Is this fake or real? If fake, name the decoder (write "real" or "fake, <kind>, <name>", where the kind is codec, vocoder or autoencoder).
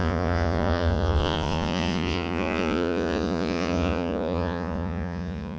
fake, vocoder, Vocos